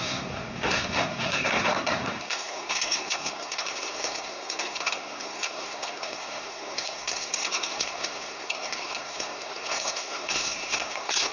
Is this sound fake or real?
fake